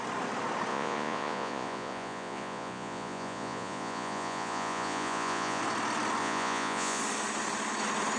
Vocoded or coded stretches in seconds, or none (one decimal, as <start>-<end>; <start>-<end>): 0.7-5.6; 6.2-7.0